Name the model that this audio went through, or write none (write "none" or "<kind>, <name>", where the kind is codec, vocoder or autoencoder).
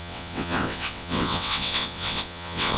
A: vocoder, WaveNeXt